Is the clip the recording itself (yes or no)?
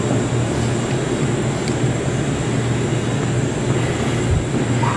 yes